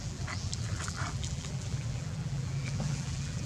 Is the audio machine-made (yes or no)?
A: yes